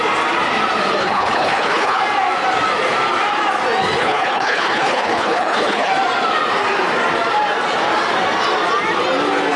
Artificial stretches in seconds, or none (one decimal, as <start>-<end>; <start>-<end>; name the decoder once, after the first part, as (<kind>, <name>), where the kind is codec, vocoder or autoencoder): 1.0-2.0 (codec, HILCodec); 4.0-5.9